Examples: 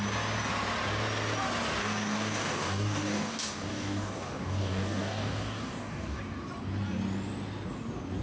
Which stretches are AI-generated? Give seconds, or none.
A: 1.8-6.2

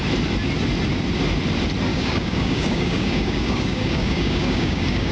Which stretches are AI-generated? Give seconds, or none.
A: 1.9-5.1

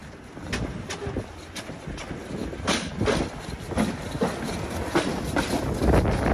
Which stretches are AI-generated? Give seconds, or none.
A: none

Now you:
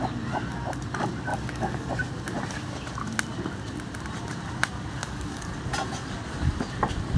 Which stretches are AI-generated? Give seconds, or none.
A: 1.3-1.9; 5.0-5.5

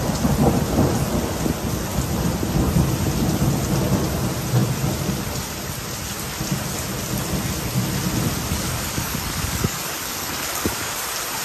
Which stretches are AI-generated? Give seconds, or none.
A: 8.4-11.0